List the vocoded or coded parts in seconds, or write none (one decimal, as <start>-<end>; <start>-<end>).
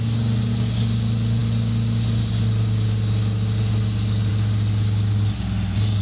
none